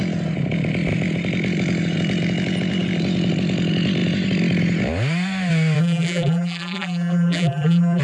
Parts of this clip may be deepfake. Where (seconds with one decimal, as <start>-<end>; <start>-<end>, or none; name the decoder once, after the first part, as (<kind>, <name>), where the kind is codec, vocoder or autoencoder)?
5.8-8.0 (vocoder, BigVGAN v2)